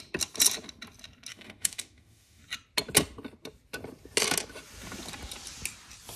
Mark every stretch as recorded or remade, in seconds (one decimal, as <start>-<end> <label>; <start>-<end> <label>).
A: 0.0-1.3 recorded; 1.3-2.4 remade; 2.4-6.2 recorded